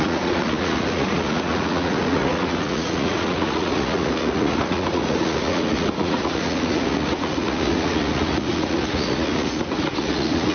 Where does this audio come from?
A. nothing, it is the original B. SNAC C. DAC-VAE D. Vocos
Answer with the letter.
D